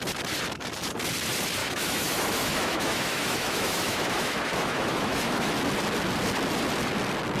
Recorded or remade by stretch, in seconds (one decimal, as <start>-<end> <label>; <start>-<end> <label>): 0.0-1.6 recorded; 1.6-5.5 remade; 5.5-7.4 recorded